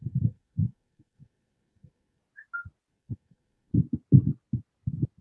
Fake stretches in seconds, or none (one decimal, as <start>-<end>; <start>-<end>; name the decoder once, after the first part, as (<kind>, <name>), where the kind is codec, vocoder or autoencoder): 0.0-2.2 (codec, SNAC); 2.9-3.7